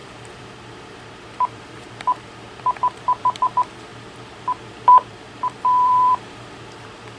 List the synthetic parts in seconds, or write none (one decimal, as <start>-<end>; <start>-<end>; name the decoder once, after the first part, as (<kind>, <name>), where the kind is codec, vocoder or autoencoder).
0.0-3.9 (vocoder, BigVGAN v2); 4.7-7.2